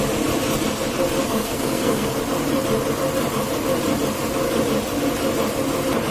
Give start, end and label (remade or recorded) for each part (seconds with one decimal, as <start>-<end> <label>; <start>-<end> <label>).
0.0-1.2 recorded; 1.2-2.1 remade; 2.1-6.1 recorded